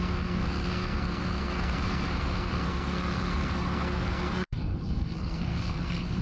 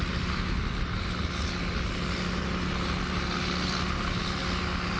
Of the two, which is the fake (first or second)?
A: first